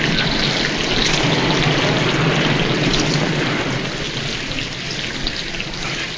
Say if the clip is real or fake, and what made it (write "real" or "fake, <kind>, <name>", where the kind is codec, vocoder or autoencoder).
real